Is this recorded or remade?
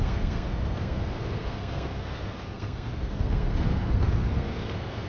remade